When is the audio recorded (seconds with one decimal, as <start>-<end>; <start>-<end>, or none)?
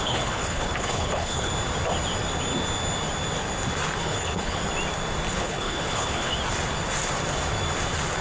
1.5-4.0; 4.6-5.3; 6.3-8.2